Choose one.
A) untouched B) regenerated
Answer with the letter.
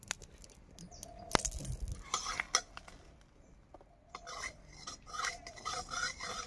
A